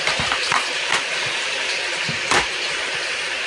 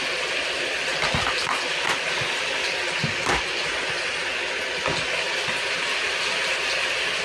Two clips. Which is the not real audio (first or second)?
first